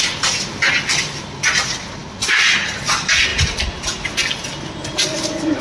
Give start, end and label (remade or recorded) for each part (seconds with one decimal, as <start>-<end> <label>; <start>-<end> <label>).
0.0-5.6 recorded